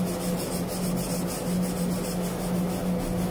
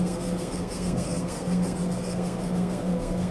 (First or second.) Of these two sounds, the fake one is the second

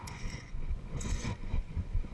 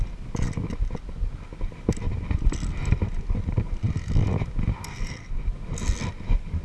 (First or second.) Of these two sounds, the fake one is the first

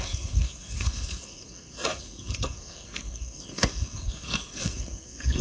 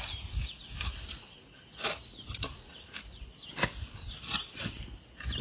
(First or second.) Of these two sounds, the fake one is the first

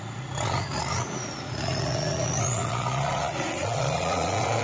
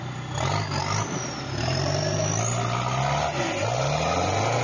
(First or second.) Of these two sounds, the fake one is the first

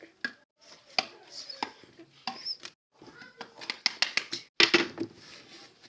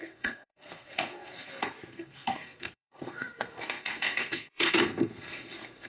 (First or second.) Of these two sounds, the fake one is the second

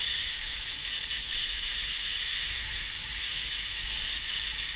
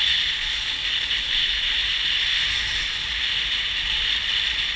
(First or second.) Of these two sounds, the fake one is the first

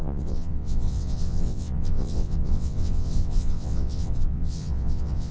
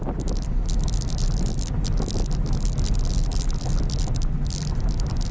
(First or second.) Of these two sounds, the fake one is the first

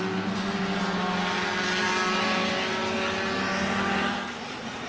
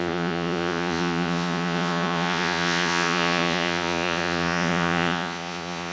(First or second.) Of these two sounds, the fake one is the second